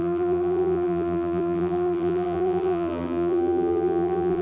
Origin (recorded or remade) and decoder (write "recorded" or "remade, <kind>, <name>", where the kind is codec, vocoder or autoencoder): remade, vocoder, BigVGAN v2